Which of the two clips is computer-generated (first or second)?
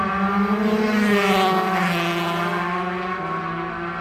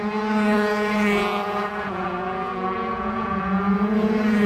second